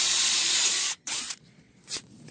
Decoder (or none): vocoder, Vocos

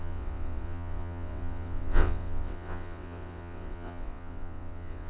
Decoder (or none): vocoder, WaveNeXt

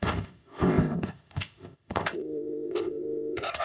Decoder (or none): codec, ZipCodec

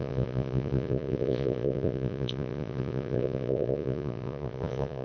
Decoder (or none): vocoder, Vocos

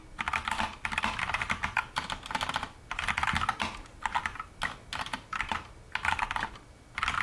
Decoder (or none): none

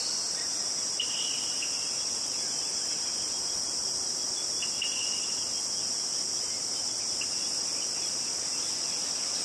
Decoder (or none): none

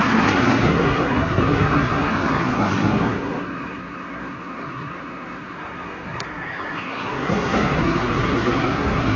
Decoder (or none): codec, SNAC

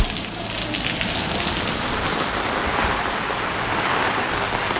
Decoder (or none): none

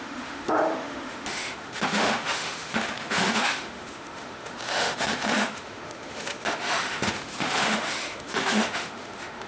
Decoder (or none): autoencoder, DAC-VAE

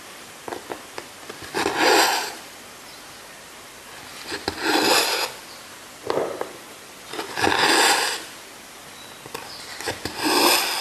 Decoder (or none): none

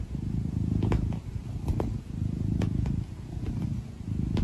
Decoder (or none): none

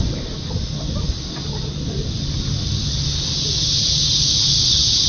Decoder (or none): none